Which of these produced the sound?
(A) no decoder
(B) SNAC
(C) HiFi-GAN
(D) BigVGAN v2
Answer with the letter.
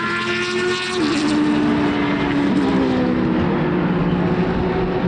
A